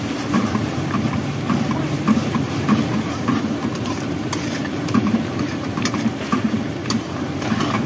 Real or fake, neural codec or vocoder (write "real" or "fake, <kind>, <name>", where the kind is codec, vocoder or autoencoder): fake, vocoder, BigVGAN v2